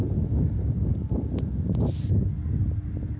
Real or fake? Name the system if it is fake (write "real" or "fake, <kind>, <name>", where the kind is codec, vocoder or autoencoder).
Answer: real